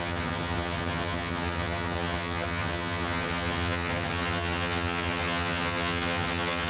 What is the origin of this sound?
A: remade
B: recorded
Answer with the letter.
A